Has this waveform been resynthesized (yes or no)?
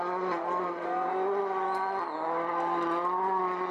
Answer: no